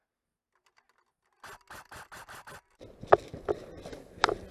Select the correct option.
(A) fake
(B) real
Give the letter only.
B